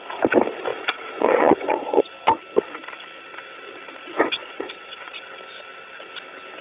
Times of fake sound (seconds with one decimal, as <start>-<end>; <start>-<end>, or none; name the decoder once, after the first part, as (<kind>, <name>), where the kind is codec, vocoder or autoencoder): 0.7-2.0 (vocoder, Vocos); 4.4-5.2